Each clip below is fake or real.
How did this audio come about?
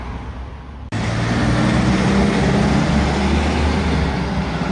real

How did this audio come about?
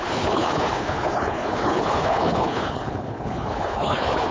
fake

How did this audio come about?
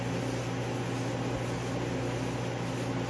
real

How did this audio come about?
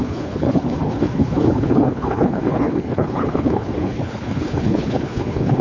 fake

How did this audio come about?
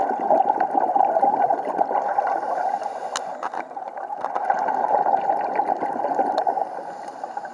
real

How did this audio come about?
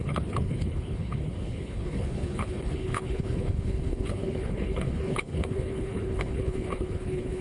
fake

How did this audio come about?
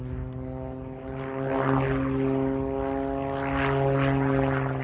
real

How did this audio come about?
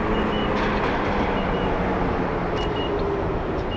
real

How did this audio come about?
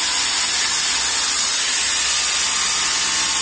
real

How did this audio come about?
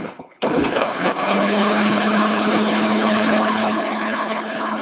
fake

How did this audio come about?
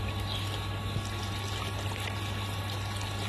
real